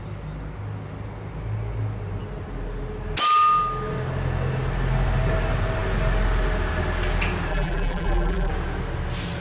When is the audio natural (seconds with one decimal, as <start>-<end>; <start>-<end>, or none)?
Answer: 0.0-7.5; 8.5-9.4